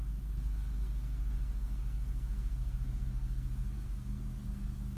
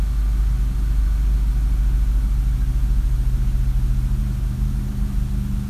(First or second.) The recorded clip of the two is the second